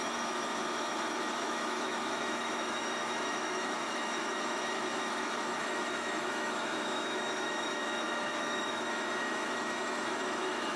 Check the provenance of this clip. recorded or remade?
remade